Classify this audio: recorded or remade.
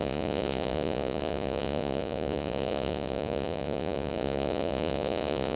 remade